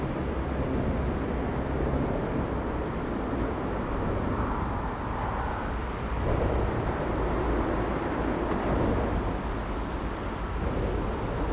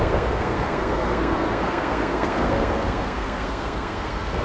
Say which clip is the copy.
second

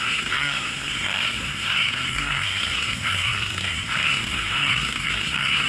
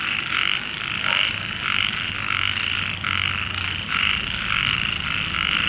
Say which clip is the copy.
first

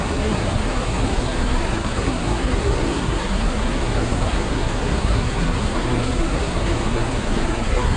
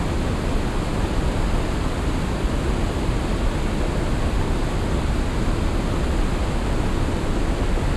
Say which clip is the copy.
first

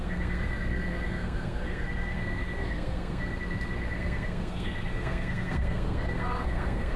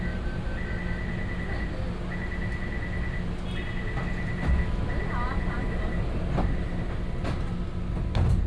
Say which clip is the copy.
first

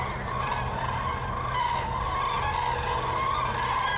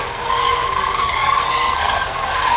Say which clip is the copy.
second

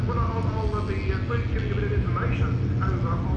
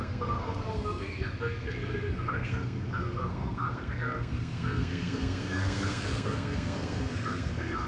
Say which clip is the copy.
second